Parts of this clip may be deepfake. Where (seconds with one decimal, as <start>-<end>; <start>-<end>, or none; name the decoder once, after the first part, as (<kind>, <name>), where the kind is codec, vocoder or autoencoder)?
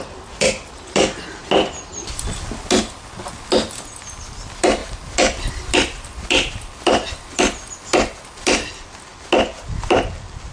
none